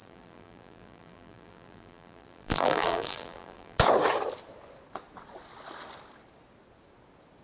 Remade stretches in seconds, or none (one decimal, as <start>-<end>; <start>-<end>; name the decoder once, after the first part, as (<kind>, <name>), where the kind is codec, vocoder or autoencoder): 0.0-3.8 (vocoder, BigVGAN v2)